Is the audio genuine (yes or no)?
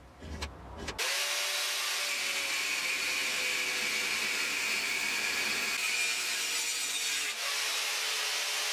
yes